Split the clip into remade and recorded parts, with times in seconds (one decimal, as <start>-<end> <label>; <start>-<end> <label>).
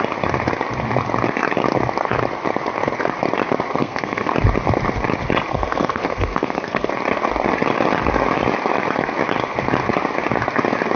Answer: 0.0-3.8 recorded; 3.8-4.3 remade; 4.3-5.5 recorded; 5.5-6.9 remade; 6.9-11.0 recorded